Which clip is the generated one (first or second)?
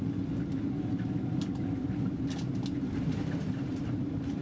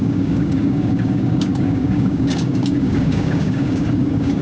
second